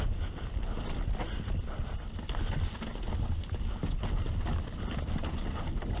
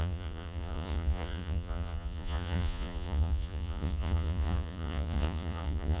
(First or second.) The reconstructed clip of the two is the second